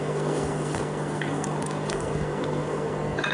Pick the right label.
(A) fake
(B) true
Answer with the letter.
A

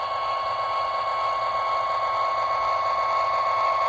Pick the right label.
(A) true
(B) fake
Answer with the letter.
A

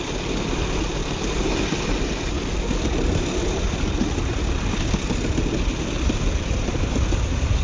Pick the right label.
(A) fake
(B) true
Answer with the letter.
B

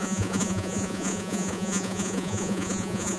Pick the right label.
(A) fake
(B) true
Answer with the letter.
A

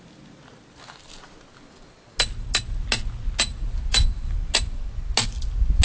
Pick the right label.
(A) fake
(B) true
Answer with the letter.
B